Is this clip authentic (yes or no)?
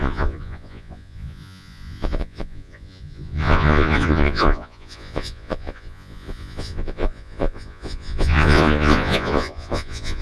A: no